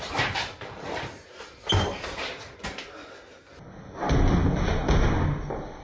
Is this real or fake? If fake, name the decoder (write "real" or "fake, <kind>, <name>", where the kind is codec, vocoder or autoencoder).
real